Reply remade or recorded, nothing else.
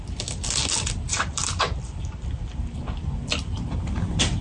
recorded